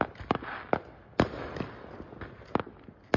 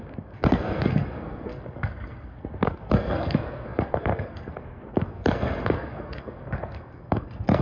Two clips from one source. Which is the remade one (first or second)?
second